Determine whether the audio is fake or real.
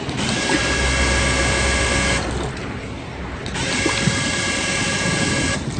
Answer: real